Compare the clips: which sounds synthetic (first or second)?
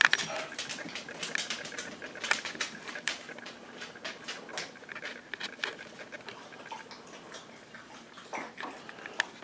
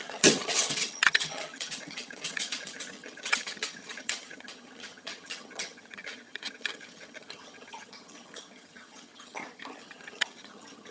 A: second